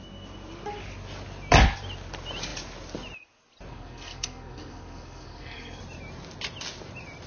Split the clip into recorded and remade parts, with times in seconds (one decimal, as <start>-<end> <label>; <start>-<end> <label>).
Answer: 0.0-3.7 recorded; 3.7-5.8 remade; 5.8-7.3 recorded

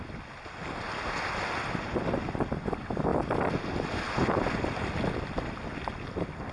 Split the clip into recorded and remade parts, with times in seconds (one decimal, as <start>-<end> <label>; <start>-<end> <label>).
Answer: 0.0-6.5 recorded

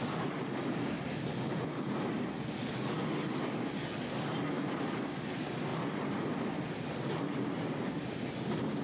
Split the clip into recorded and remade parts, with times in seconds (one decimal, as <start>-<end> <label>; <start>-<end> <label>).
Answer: 0.0-8.8 recorded

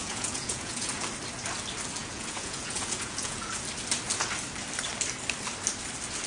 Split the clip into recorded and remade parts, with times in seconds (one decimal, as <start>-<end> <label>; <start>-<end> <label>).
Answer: 0.0-0.9 remade; 0.9-2.0 recorded; 2.0-3.5 remade; 3.5-6.3 recorded

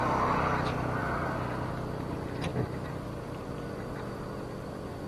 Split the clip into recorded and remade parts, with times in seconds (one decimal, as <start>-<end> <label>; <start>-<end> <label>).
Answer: 0.0-1.0 recorded; 1.0-1.7 remade; 1.7-2.5 recorded; 2.5-3.5 remade; 3.5-5.1 recorded

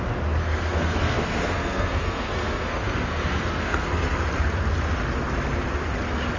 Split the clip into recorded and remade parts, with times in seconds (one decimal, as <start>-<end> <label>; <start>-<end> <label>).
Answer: 0.0-0.4 recorded; 0.4-4.2 remade; 4.2-6.4 recorded

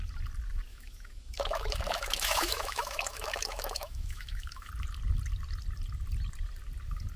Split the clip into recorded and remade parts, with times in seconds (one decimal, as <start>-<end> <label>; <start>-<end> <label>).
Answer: 0.0-0.7 recorded; 0.7-4.7 remade; 4.7-7.2 recorded